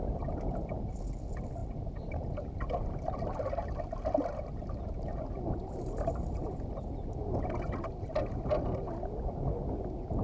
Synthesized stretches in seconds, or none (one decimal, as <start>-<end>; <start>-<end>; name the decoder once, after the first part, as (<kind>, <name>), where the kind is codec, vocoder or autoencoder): none